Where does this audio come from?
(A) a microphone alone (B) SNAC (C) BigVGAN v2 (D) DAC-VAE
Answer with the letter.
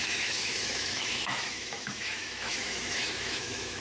D